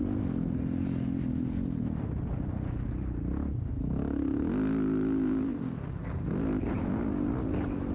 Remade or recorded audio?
recorded